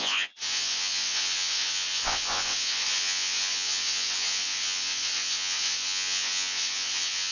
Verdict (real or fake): fake